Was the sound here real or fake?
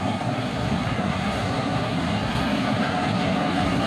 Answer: fake